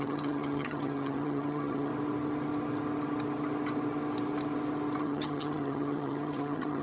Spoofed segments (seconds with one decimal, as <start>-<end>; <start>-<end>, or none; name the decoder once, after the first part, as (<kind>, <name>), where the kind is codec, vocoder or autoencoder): 0.0-1.9 (vocoder, HiFi-GAN); 5.0-6.8